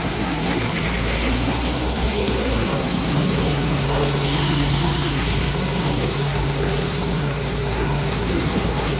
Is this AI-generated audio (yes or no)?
yes